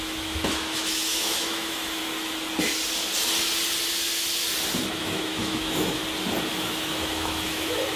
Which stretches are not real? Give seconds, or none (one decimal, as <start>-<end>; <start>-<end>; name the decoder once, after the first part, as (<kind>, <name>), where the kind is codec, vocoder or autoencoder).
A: 0.0-2.0 (autoencoder, DAC-VAE); 4.9-6.0; 6.5-8.0